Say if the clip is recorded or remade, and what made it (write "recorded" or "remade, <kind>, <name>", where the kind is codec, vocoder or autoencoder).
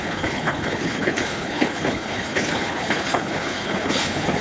remade, codec, HILCodec